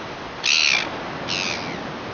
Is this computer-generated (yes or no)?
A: no